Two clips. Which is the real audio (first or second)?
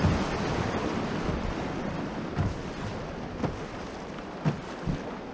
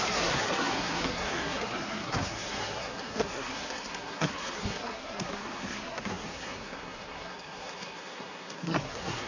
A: first